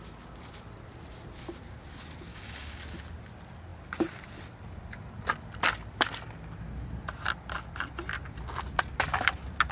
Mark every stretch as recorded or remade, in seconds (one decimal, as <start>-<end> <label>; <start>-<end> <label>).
0.0-2.3 recorded; 2.3-2.8 remade; 2.8-9.7 recorded